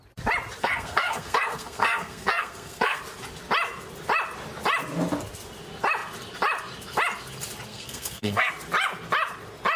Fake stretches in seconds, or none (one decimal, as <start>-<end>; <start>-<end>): 0.6-3.0; 7.7-8.5